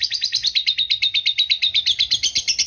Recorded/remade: recorded